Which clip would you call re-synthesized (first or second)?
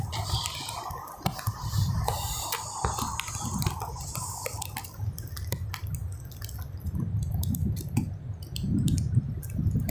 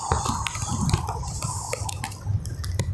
second